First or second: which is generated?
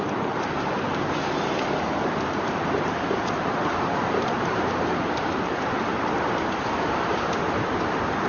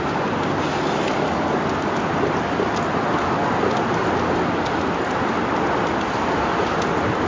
first